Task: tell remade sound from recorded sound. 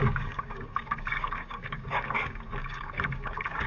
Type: remade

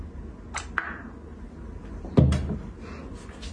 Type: recorded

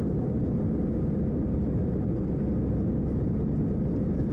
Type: recorded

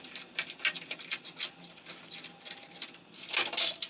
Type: recorded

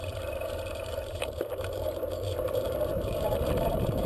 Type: remade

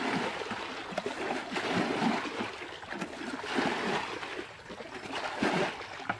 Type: recorded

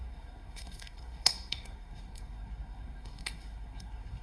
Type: remade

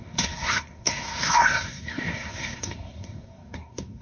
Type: remade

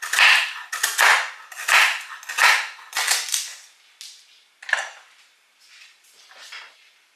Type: recorded